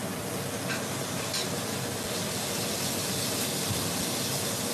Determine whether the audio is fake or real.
real